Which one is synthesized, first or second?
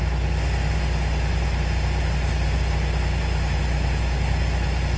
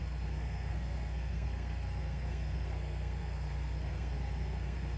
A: second